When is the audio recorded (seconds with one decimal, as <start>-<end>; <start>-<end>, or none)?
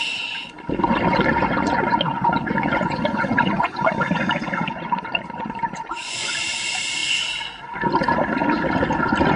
0.0-1.1; 6.3-9.4